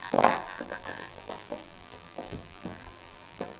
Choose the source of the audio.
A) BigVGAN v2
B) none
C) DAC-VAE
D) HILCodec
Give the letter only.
A